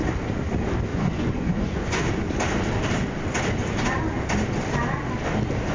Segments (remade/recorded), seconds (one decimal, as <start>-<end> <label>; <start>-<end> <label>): 0.0-0.9 recorded; 0.9-2.0 remade; 2.0-5.7 recorded